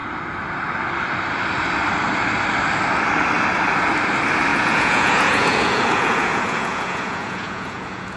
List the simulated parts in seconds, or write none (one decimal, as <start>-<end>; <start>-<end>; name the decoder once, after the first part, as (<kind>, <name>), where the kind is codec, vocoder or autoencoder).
4.5-8.2 (vocoder, Vocos)